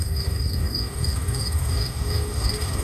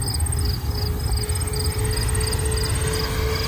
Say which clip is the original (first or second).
second